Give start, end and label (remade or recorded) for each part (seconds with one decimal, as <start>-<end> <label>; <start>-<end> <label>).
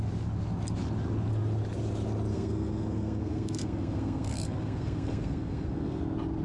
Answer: 0.0-2.3 recorded; 2.3-6.0 remade; 6.0-6.4 recorded